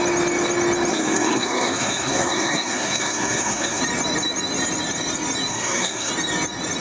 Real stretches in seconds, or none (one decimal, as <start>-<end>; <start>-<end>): 0.0-0.9; 3.8-5.5; 6.1-6.8